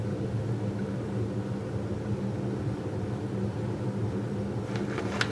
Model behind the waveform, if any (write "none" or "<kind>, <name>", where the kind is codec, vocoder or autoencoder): none